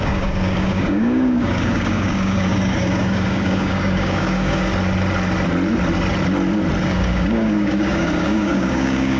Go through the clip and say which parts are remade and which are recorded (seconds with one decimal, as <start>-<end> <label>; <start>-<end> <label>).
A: 0.0-4.7 remade; 4.7-6.8 recorded; 6.8-9.2 remade

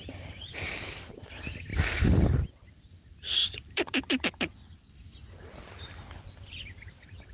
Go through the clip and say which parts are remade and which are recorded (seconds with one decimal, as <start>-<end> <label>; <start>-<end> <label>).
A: 0.0-7.3 recorded

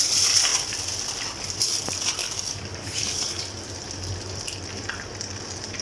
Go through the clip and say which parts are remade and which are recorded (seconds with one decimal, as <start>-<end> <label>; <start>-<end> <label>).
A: 0.0-2.2 recorded; 2.2-3.2 remade; 3.2-5.8 recorded

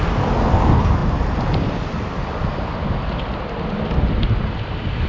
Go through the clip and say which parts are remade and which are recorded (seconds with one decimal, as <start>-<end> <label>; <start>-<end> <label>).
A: 0.0-5.1 recorded

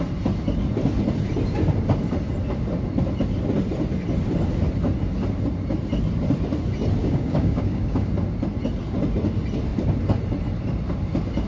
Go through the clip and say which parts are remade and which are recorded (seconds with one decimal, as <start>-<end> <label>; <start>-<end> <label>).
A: 0.0-7.0 recorded; 7.0-8.1 remade; 8.1-11.5 recorded

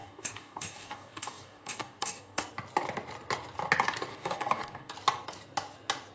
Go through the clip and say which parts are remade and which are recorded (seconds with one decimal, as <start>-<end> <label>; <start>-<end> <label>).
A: 0.0-2.4 remade; 2.4-4.1 recorded; 4.1-4.9 remade; 4.9-6.1 recorded